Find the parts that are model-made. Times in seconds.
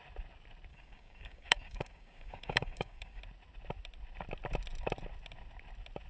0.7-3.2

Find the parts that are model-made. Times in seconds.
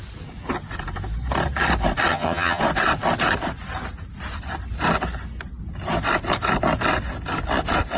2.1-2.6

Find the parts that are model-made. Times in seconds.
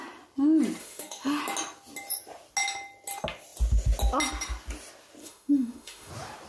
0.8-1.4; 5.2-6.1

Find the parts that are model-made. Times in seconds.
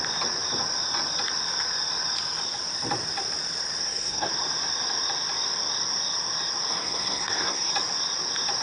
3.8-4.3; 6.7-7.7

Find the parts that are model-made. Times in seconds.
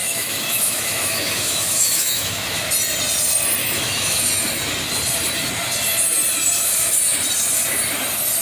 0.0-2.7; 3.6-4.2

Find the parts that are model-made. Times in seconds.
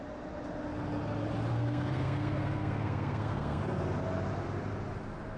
1.5-3.6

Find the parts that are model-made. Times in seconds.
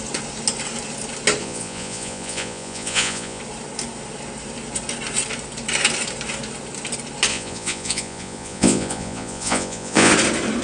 1.4-3.4; 7.3-10.1